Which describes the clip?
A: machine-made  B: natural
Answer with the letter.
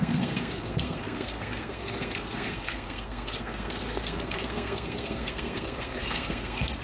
A